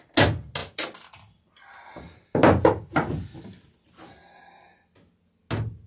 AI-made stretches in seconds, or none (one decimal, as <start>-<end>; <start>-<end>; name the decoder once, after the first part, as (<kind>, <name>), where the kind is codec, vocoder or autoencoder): none